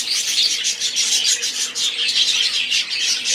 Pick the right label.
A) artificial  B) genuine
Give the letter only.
B